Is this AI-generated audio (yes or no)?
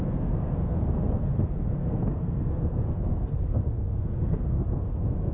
yes